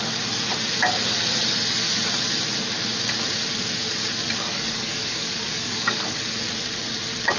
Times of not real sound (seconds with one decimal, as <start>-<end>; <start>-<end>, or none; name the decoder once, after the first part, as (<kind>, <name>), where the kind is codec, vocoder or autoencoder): 4.5-6.2 (codec, DAC)